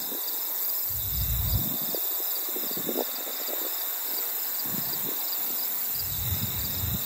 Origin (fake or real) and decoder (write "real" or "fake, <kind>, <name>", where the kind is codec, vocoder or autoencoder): real